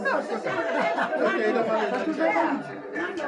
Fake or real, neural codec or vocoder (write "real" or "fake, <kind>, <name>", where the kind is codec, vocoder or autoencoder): real